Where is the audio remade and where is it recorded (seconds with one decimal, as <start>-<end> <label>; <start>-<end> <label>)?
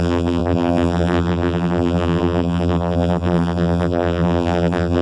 0.0-5.0 remade